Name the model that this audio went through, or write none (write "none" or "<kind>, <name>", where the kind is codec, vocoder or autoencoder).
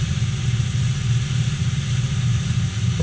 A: vocoder, BigVGAN v2